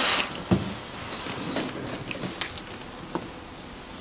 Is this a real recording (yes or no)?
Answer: yes